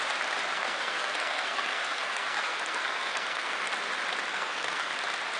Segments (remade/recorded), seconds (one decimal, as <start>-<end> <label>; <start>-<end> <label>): 0.0-0.5 recorded; 0.5-3.7 remade; 3.7-4.3 recorded; 4.3-4.9 remade; 4.9-5.4 recorded